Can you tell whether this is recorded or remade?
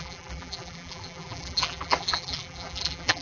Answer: remade